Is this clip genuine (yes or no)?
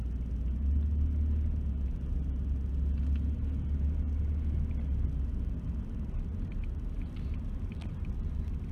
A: yes